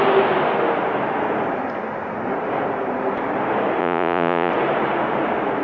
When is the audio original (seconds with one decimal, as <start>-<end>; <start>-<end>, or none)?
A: 0.0-3.8; 4.5-5.6